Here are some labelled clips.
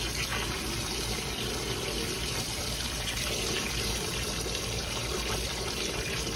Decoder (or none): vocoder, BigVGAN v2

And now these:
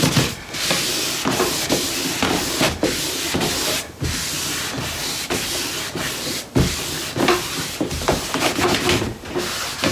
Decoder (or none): none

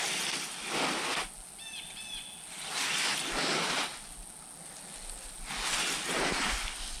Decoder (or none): none